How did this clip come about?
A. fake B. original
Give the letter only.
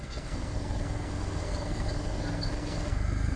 A